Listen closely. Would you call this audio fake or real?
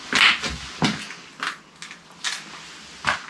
real